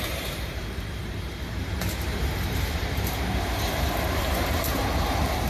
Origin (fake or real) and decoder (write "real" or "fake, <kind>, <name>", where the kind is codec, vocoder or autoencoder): fake, vocoder, BigVGAN v2